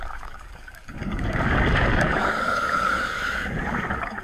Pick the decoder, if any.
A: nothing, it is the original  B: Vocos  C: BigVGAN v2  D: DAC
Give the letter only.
D